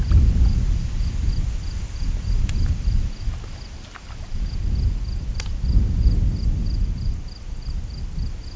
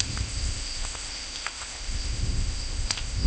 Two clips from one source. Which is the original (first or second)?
first